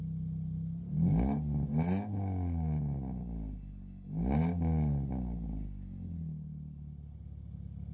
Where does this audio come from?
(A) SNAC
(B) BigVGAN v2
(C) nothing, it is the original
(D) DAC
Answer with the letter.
C